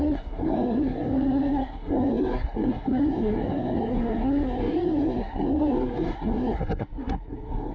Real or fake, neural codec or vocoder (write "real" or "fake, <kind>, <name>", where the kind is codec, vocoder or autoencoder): fake, codec, SNAC